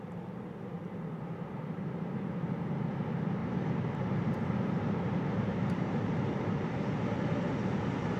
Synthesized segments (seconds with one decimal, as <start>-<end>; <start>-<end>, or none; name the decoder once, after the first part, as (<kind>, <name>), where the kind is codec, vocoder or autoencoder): 3.4-6.8 (vocoder, BigVGAN v2)